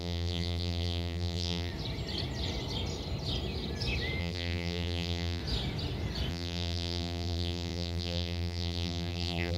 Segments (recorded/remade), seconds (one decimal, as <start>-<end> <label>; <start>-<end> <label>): 0.0-1.7 remade; 1.7-4.2 recorded; 4.2-5.4 remade; 5.4-6.3 recorded; 6.3-9.6 remade